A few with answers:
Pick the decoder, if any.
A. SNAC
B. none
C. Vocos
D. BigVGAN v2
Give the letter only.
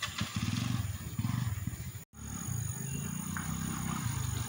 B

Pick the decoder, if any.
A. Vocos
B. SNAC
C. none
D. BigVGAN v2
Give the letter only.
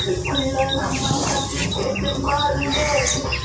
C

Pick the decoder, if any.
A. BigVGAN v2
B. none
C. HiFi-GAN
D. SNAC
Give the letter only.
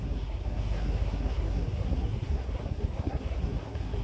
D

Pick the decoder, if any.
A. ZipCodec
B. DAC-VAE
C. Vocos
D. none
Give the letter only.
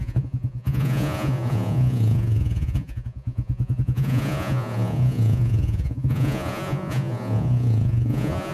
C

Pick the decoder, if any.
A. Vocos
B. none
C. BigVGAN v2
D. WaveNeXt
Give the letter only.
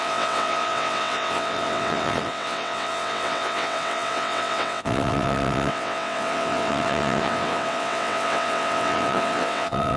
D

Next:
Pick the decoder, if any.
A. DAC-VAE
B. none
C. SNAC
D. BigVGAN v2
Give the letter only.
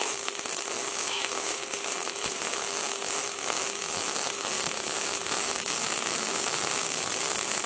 A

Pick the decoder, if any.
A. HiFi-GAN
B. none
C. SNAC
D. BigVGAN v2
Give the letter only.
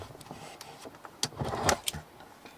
B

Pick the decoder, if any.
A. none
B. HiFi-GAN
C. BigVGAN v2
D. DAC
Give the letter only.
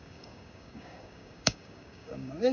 D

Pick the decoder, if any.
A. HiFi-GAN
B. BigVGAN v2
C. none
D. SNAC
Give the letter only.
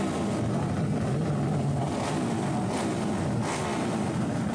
B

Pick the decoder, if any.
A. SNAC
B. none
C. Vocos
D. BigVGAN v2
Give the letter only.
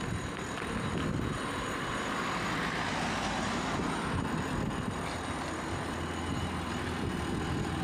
B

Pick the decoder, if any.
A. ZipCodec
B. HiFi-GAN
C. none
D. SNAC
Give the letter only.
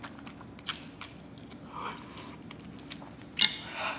C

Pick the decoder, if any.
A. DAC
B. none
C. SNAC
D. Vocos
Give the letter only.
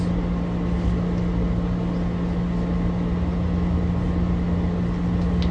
B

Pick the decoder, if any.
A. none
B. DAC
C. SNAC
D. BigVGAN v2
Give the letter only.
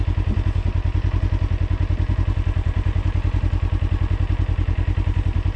A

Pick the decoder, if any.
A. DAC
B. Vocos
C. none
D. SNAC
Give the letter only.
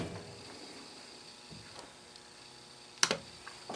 C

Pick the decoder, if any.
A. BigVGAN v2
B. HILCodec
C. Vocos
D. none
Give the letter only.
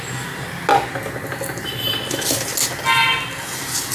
D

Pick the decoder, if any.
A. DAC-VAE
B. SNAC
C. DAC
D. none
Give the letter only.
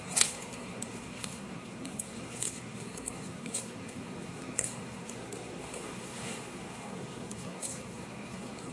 B